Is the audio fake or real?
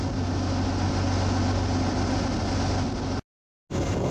real